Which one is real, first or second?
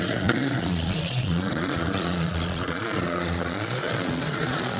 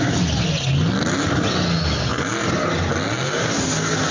second